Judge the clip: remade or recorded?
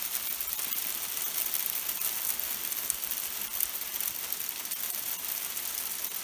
recorded